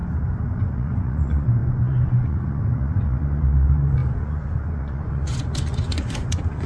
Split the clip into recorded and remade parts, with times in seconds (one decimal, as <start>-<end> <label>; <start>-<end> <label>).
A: 0.0-0.5 recorded; 0.5-6.7 remade